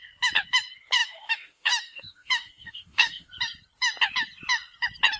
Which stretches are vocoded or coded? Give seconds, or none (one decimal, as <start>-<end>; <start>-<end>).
1.0-3.3